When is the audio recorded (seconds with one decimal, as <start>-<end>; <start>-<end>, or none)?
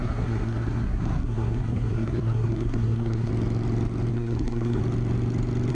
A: 3.3-4.1; 4.8-5.7